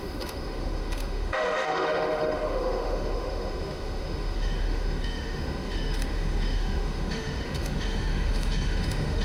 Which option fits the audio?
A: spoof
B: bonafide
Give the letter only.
A